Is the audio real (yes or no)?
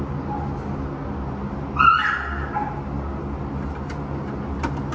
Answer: yes